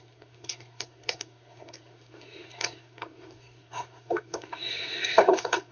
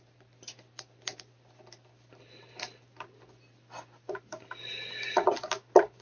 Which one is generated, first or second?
first